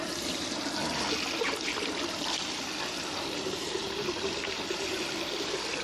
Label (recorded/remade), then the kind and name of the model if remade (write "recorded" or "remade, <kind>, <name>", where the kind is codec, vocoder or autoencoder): recorded